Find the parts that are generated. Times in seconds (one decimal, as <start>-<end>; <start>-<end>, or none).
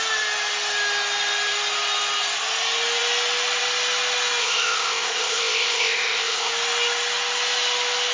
4.4-6.5